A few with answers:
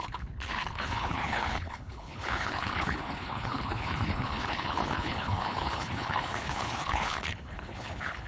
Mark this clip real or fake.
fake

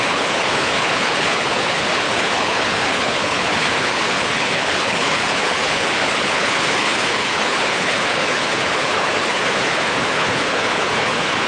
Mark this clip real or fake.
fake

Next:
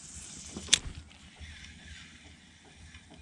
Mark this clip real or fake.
real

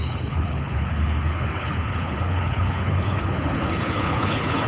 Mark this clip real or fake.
fake